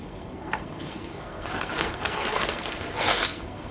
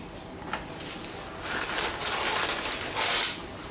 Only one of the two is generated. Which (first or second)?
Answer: first